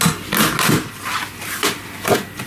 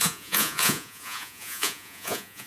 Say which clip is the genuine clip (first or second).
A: first